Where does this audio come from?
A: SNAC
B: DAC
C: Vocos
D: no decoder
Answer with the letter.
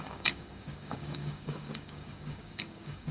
B